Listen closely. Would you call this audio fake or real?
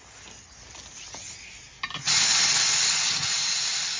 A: real